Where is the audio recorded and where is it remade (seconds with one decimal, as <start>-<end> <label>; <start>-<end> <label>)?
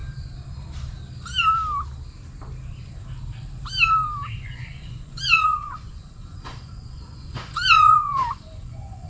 0.0-4.3 recorded; 4.3-9.1 remade